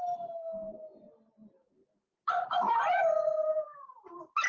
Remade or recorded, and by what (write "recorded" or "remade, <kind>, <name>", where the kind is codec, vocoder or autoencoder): recorded